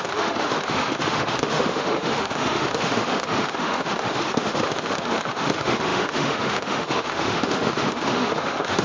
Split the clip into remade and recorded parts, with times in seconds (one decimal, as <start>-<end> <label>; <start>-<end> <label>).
0.0-8.8 remade